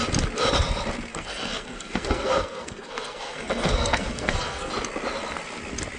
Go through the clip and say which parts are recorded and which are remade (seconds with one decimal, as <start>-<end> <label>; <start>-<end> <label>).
0.0-1.1 recorded; 1.1-4.7 remade; 4.7-6.0 recorded